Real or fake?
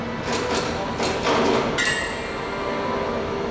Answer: real